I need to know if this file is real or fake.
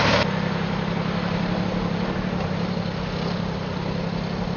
real